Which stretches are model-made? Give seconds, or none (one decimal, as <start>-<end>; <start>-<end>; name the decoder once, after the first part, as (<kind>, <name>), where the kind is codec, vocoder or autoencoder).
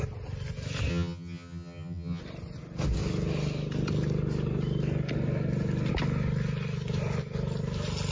0.9-2.2 (vocoder, HiFi-GAN)